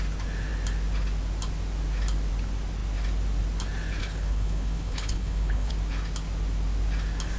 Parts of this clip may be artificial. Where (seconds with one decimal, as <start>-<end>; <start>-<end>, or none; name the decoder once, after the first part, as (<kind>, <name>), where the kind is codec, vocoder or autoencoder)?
4.0-5.7 (codec, HILCodec)